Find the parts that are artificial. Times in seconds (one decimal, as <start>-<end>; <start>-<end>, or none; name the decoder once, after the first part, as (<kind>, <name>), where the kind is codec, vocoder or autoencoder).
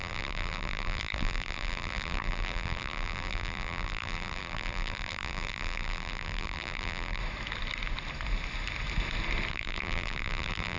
0.0-7.2 (vocoder, BigVGAN v2); 9.5-10.8